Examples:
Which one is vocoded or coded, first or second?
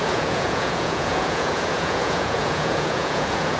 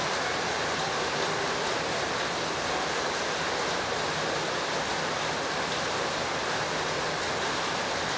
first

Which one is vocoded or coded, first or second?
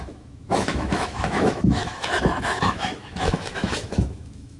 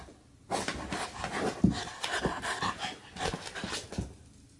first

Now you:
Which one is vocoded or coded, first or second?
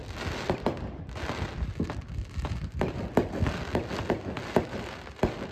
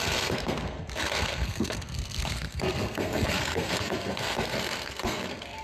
second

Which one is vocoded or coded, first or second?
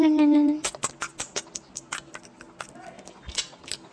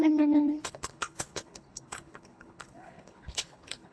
second